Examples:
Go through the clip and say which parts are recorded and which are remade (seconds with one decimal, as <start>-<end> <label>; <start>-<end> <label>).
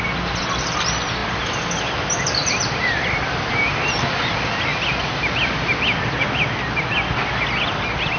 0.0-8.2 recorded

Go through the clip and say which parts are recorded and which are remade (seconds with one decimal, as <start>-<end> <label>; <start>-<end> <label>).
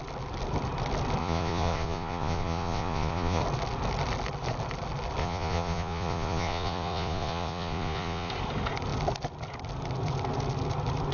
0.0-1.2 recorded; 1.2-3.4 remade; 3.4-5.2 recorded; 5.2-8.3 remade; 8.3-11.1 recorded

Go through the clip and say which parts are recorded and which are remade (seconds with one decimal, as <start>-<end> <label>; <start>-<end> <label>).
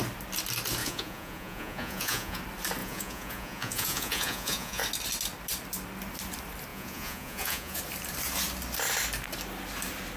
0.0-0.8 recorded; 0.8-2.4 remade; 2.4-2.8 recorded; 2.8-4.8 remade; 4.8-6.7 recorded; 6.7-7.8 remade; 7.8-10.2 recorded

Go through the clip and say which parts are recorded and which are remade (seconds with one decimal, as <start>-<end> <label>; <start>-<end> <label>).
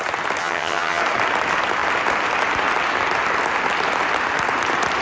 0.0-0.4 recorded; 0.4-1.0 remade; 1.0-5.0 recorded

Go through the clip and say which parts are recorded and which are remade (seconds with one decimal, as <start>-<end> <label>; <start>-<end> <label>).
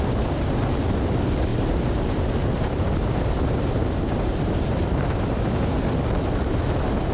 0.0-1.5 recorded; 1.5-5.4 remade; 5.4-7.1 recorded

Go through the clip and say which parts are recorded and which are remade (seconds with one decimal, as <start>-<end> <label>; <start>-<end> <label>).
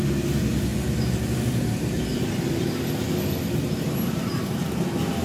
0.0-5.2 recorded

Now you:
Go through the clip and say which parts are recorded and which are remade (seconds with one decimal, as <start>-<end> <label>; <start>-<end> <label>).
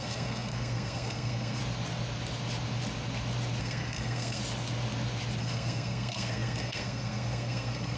0.0-1.6 remade; 1.6-3.6 recorded; 3.6-4.4 remade; 4.4-5.4 recorded; 5.4-8.0 remade